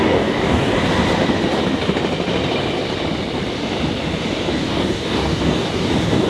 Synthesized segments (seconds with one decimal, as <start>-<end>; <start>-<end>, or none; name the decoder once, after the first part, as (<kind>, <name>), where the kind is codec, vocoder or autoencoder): 0.0-0.7 (codec, DAC); 4.5-6.3